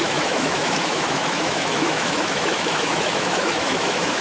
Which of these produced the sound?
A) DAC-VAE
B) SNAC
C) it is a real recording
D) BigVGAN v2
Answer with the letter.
A